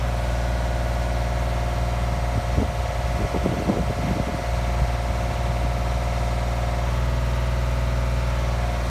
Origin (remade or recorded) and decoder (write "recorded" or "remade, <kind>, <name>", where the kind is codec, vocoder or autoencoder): recorded